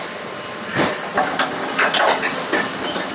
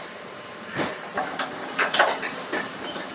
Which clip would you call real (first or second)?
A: first